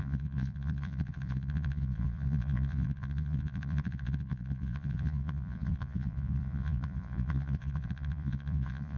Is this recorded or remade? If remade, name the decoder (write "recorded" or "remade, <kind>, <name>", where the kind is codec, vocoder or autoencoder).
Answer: remade, vocoder, Vocos